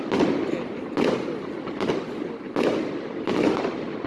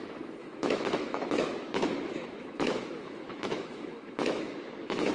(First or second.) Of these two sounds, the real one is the first